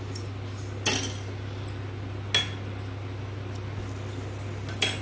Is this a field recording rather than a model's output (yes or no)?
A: yes